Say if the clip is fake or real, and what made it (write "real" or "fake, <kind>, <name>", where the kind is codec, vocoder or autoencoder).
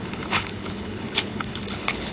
fake, codec, HILCodec